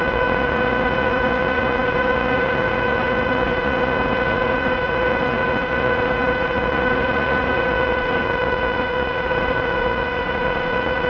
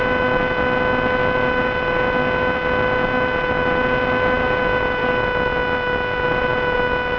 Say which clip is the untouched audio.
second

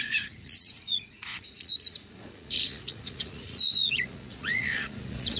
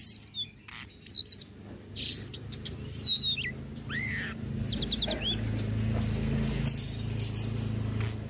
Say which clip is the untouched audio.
second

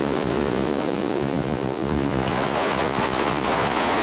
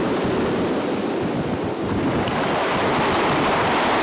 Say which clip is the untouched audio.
second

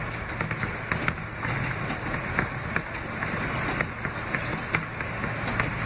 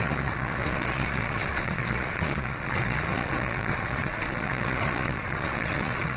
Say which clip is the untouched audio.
first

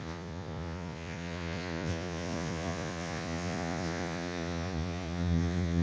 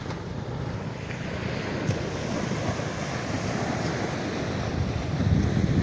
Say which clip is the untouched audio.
second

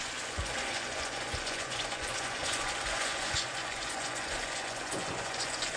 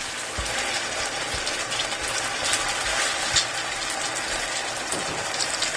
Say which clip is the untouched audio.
second